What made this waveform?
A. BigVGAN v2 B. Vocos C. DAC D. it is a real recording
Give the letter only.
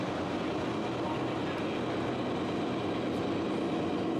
D